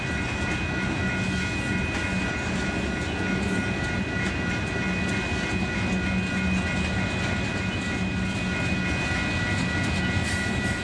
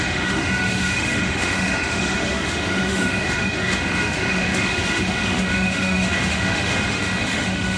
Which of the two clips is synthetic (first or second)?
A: second